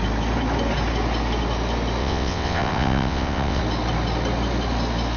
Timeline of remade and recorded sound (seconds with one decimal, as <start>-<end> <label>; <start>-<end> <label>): 0.0-2.0 recorded; 2.0-3.6 remade; 3.6-5.2 recorded